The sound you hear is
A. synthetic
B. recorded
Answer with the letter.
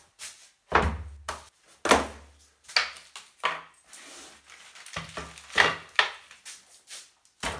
B